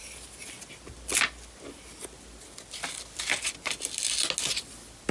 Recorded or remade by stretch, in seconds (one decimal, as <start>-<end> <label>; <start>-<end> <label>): 0.0-5.1 recorded